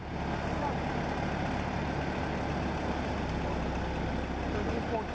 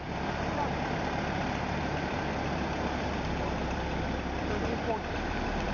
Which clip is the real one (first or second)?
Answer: first